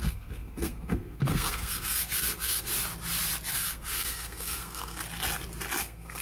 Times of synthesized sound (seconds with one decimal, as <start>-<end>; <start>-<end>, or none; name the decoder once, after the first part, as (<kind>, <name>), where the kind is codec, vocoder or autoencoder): 0.0-2.7 (codec, SNAC); 3.5-5.0; 5.8-6.2